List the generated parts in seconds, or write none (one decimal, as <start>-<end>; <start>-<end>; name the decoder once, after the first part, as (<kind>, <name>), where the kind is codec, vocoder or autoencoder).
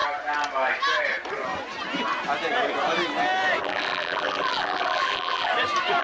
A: 3.6-5.5 (vocoder, BigVGAN v2)